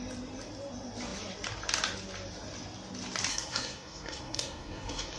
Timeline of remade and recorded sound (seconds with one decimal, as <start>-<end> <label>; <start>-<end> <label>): 0.0-3.3 recorded; 3.3-5.2 remade